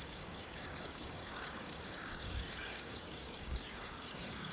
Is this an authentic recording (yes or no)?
no